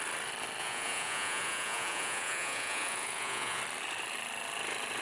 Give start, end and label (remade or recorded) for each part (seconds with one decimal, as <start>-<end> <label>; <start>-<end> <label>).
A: 0.0-0.6 recorded; 0.6-3.6 remade; 3.6-5.0 recorded